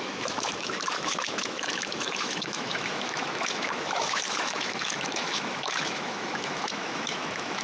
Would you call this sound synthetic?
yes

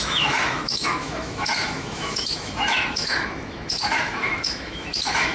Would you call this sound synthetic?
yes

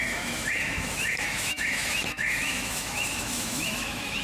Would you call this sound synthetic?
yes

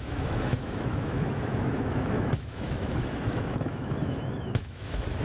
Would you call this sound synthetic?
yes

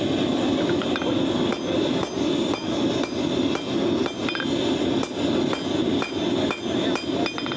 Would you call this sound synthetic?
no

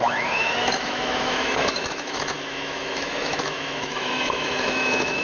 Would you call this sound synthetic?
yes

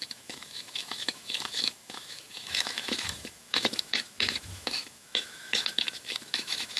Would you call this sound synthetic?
yes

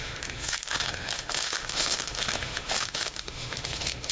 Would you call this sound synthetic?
yes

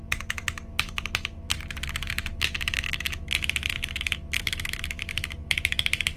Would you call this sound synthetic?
yes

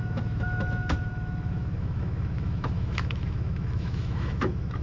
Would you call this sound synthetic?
yes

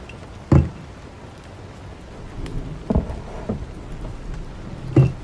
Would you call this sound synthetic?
no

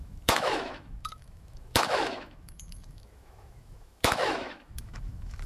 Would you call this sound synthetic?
yes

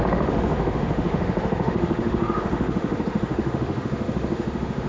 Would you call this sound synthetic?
yes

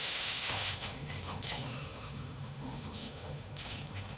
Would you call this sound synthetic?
yes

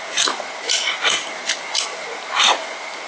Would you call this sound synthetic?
no